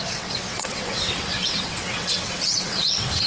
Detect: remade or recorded remade